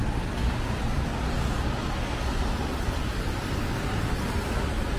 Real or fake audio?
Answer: real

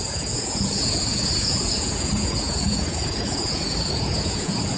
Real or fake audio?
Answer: fake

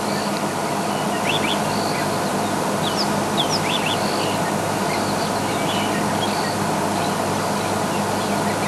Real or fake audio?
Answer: real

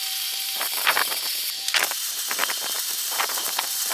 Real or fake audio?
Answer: fake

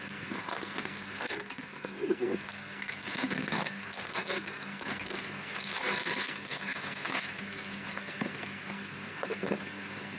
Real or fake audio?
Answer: fake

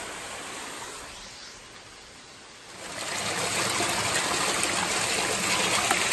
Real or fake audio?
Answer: real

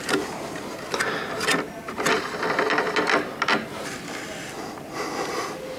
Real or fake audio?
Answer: real